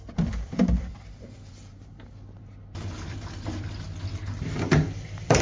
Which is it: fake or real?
fake